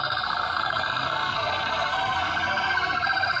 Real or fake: fake